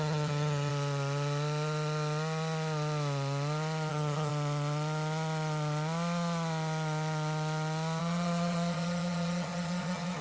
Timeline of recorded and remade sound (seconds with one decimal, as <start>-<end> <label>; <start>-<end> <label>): 0.0-0.7 remade; 0.7-3.9 recorded; 3.9-4.3 remade; 4.3-8.0 recorded; 8.0-10.2 remade